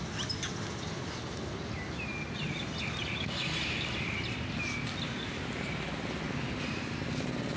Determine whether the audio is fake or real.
real